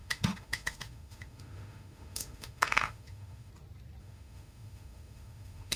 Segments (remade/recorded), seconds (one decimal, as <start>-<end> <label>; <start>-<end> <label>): 0.0-3.5 remade; 3.5-4.0 recorded; 4.0-5.8 remade